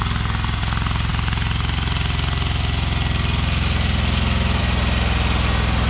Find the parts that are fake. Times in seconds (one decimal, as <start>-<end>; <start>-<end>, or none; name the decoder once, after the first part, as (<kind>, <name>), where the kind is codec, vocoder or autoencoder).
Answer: none